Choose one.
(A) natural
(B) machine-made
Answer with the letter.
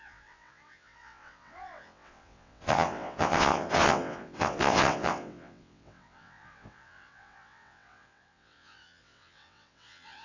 B